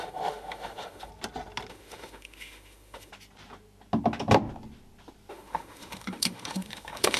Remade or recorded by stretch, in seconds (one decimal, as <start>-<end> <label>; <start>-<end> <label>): 0.0-1.1 remade; 1.1-1.7 recorded; 1.7-3.1 remade; 3.1-5.3 recorded; 5.3-7.2 remade